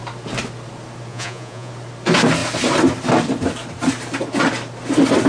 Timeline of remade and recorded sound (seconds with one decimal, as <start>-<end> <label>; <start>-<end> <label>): 0.0-1.1 recorded; 1.1-1.7 remade; 1.7-5.3 recorded